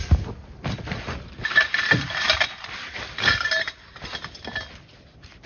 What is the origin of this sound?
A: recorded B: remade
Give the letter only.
A